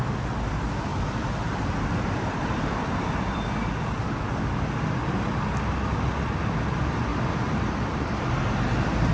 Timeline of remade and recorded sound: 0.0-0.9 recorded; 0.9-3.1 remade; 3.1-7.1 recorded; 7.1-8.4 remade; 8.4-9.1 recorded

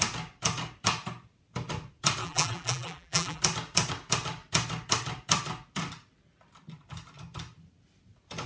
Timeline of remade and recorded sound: 0.0-2.2 recorded; 2.2-3.4 remade; 3.4-8.5 recorded

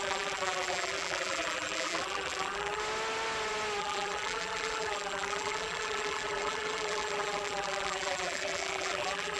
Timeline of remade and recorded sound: 0.0-2.8 remade; 2.8-3.8 recorded; 3.8-9.4 remade

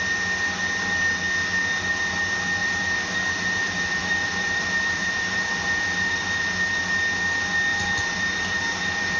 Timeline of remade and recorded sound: 0.0-2.6 recorded; 2.6-6.4 remade; 6.4-7.7 recorded; 7.7-9.2 remade